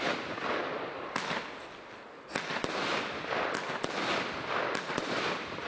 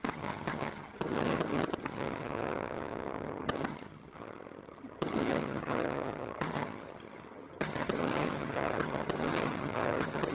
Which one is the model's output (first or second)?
second